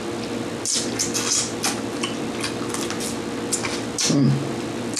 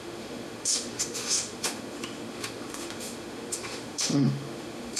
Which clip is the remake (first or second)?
second